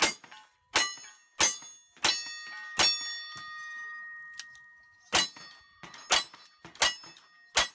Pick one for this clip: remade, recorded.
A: recorded